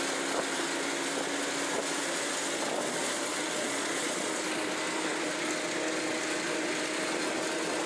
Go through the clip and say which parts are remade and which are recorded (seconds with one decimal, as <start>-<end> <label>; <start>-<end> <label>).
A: 0.0-3.6 recorded; 3.6-4.3 remade; 4.3-7.9 recorded